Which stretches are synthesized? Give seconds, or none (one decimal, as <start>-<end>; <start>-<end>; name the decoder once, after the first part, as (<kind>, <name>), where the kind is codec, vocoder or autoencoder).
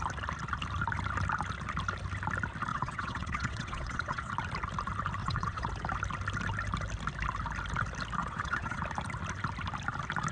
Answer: 2.7-4.3 (vocoder, WaveNeXt); 5.2-5.7; 8.2-8.8